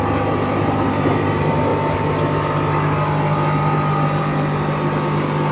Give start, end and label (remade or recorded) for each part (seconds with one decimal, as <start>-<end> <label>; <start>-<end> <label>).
0.0-5.5 recorded